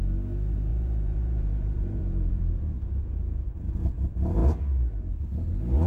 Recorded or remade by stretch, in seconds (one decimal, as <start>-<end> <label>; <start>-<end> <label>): 0.0-0.7 recorded; 0.7-3.5 remade; 3.5-5.9 recorded